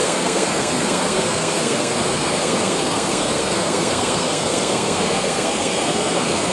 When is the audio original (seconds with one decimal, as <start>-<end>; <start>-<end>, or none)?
none